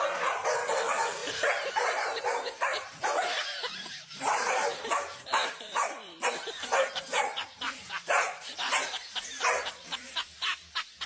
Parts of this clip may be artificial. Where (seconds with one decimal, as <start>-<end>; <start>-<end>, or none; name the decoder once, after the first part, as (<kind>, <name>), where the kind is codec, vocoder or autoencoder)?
1.2-5.0 (vocoder, BigVGAN v2); 5.4-10.5